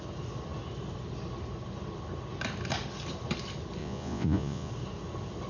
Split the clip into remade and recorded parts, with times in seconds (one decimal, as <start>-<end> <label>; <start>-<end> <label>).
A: 0.0-3.8 recorded; 3.8-4.7 remade; 4.7-5.5 recorded